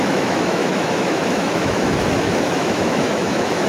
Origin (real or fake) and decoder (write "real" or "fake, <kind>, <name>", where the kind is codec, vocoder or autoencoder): fake, autoencoder, DAC-VAE